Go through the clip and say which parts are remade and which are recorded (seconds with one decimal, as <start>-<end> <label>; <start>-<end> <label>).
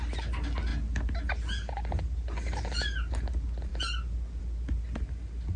0.0-5.6 recorded